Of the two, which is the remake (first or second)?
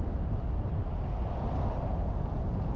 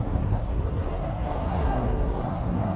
second